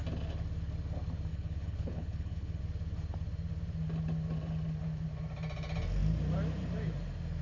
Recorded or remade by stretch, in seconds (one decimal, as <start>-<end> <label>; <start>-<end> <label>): 0.0-1.3 recorded; 1.3-2.6 remade; 2.6-7.4 recorded